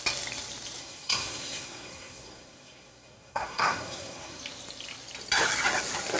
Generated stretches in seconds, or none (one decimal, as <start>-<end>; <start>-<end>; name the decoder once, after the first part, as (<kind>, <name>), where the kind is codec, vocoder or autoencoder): 0.8-4.4 (codec, SNAC)